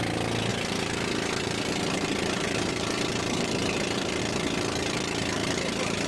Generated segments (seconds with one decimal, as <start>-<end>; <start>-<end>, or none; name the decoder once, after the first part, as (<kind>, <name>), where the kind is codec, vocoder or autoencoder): 0.5-4.2 (vocoder, BigVGAN v2); 5.4-6.1

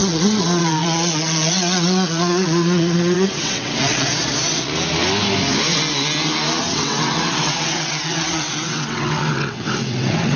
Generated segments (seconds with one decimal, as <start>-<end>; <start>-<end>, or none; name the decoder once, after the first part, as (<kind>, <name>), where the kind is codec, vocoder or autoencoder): 0.0-4.1 (vocoder, WaveNeXt); 6.6-10.4

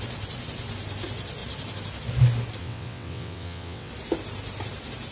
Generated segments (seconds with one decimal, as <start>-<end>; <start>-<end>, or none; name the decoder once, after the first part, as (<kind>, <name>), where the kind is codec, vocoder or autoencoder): 2.6-3.9 (vocoder, WaveNeXt)

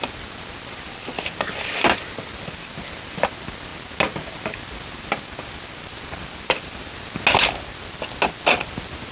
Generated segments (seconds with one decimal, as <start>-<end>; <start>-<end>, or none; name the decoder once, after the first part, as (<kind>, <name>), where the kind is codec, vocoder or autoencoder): none

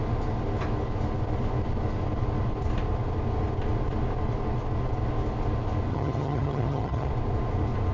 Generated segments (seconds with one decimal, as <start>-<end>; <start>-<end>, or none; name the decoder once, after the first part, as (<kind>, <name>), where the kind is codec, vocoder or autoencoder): 5.9-7.1 (vocoder, HiFi-GAN)